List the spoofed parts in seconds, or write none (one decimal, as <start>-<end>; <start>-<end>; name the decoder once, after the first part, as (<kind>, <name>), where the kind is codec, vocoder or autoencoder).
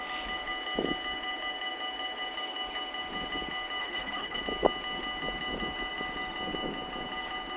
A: 3.8-4.4 (codec, HILCodec)